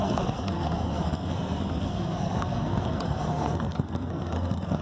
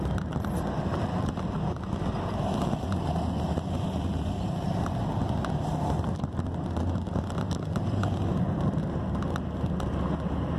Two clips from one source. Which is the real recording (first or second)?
second